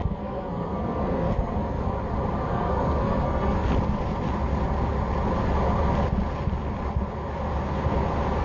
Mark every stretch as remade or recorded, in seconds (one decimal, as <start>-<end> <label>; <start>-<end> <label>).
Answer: 0.0-1.9 remade; 1.9-2.5 recorded; 2.5-3.7 remade; 3.7-8.4 recorded